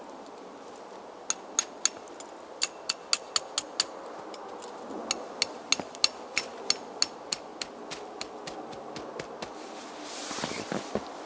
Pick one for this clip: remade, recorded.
recorded